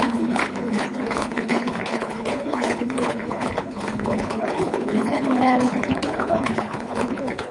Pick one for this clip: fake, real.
fake